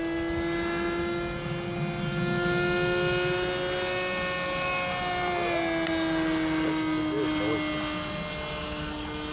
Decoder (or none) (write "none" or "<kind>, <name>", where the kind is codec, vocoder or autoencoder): none